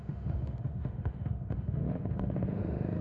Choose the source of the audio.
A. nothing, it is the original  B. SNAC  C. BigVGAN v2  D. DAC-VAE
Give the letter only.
D